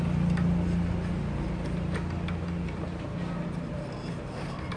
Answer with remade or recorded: recorded